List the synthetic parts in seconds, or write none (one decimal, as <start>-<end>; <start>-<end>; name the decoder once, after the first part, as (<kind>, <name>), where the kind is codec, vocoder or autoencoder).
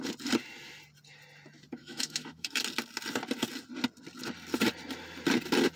1.8-2.6 (autoencoder, DAC-VAE)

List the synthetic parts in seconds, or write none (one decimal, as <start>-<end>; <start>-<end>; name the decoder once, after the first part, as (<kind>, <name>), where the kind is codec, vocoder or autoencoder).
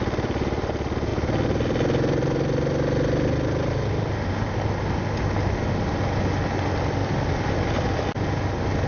7.0-8.4 (vocoder, BigVGAN v2)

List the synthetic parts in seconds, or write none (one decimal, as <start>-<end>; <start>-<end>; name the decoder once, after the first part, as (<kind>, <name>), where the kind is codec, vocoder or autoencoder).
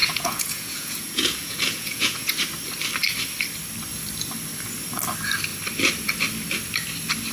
0.0-2.3 (vocoder, Vocos)